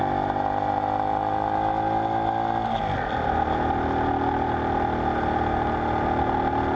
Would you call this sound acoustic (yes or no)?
yes